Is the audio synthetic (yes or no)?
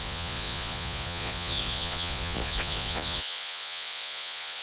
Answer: yes